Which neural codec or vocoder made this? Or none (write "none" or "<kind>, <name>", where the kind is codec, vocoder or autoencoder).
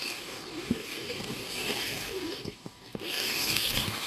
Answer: codec, DAC